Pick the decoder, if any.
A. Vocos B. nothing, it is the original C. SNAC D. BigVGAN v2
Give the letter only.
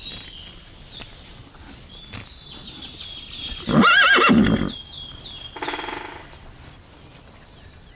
B